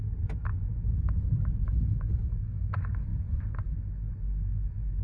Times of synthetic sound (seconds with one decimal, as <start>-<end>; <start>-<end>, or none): 1.6-2.7